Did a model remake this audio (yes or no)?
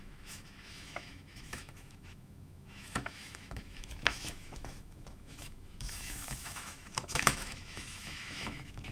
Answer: yes